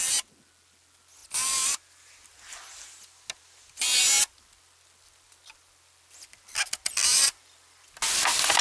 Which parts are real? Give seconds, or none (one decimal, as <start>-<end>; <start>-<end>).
0.0-8.6